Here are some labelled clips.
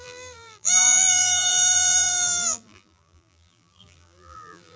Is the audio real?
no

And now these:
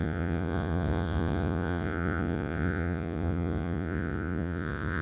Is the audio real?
no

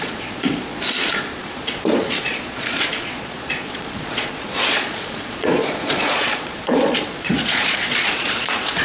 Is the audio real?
no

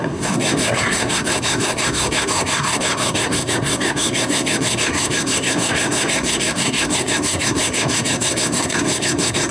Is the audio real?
no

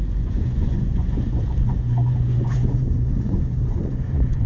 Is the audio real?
no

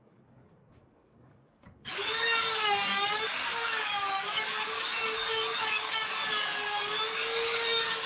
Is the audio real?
no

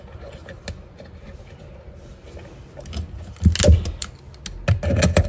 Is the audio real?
yes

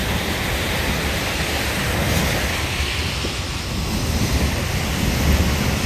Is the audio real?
yes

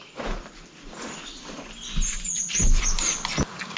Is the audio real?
yes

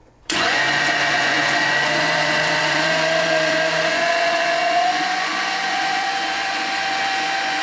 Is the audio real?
no